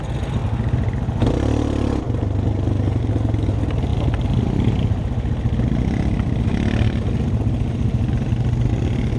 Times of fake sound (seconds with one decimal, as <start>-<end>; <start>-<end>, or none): none